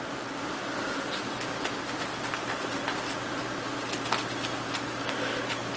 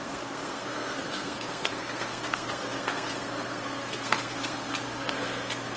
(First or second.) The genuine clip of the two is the first